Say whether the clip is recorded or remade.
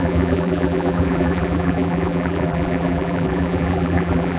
remade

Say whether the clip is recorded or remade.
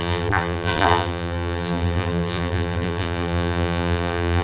remade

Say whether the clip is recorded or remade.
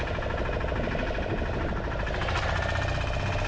recorded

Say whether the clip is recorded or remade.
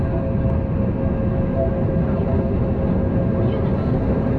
recorded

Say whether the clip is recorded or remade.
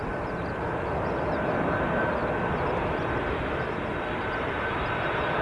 remade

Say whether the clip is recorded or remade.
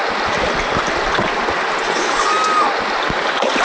recorded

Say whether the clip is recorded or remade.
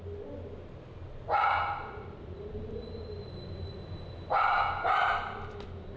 recorded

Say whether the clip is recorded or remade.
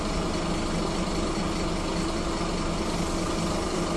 recorded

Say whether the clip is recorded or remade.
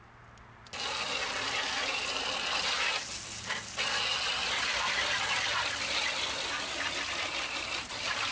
recorded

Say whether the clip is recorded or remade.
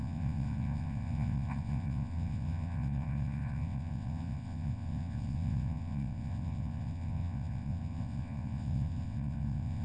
remade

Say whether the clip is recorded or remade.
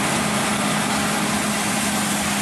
recorded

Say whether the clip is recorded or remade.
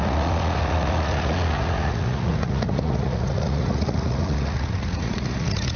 remade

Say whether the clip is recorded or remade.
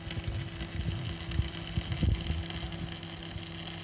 recorded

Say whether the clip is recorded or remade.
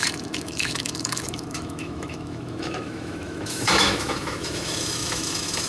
remade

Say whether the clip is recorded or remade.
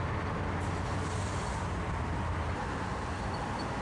recorded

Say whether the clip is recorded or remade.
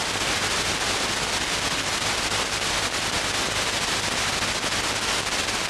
recorded